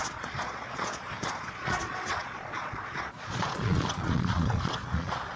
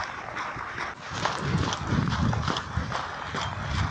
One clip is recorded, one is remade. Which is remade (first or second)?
first